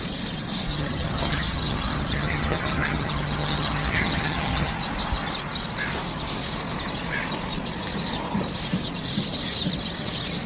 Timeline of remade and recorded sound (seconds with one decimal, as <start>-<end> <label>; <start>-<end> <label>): 0.0-0.7 recorded; 0.7-4.7 remade; 4.7-10.5 recorded